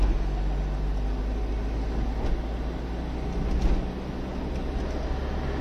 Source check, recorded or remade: recorded